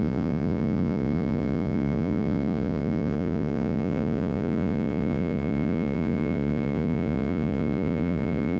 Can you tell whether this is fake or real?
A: fake